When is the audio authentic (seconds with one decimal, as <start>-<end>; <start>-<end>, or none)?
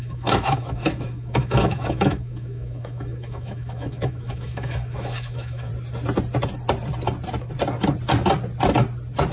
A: 5.7-9.3